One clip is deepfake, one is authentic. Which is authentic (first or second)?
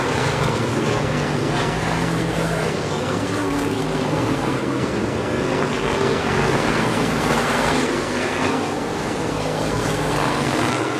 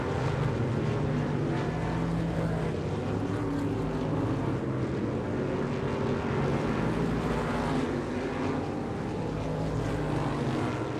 second